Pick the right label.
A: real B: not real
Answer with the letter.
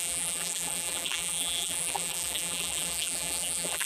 B